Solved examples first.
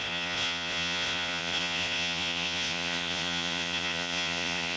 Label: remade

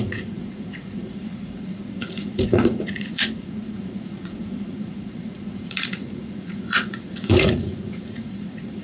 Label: remade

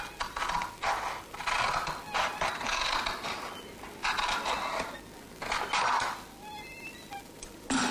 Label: recorded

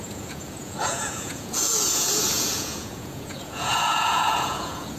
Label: remade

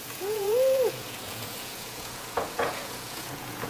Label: remade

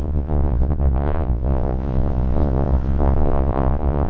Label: remade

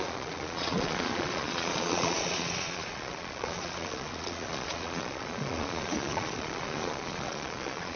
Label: remade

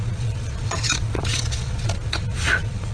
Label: remade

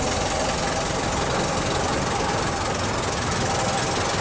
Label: recorded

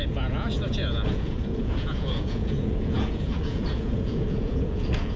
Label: remade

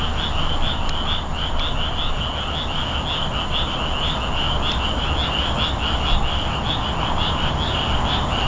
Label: recorded